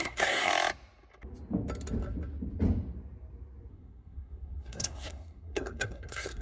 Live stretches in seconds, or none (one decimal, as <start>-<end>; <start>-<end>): 0.5-3.7